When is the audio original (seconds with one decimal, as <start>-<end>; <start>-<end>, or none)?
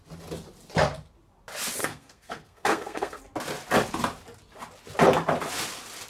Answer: 0.0-1.8; 3.2-6.1